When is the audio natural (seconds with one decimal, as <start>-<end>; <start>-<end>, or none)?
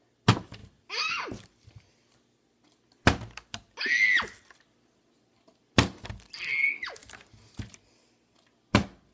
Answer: 0.0-9.1